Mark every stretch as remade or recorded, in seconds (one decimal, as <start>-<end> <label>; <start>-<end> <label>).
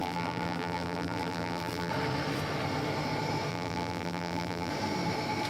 0.0-1.9 remade; 1.9-3.5 recorded; 3.5-4.7 remade; 4.7-5.5 recorded